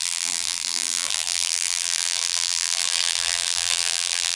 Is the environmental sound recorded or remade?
remade